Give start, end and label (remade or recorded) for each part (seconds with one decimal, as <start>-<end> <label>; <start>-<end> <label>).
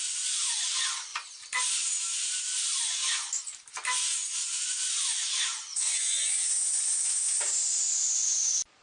0.0-4.2 recorded; 4.2-4.9 remade; 4.9-5.7 recorded; 5.7-7.4 remade; 7.4-8.8 recorded